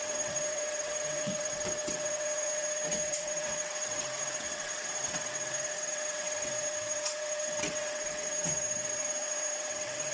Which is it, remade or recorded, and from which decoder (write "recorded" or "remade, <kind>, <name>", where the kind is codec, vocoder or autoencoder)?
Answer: remade, vocoder, WaveNeXt